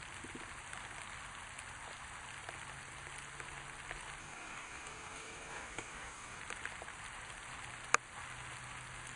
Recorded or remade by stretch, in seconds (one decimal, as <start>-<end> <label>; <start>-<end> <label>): 0.0-4.2 recorded; 4.2-6.4 remade; 6.4-9.2 recorded